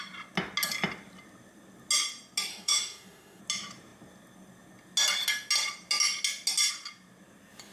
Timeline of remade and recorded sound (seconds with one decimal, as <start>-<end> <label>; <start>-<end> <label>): 0.0-2.5 recorded; 2.5-3.4 remade; 3.4-7.7 recorded

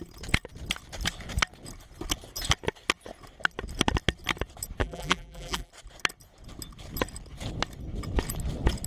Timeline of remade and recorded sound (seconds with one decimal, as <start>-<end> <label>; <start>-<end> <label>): 0.0-4.8 recorded; 4.8-5.7 remade; 5.7-8.9 recorded